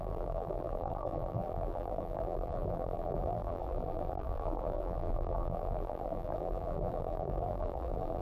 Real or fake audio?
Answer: fake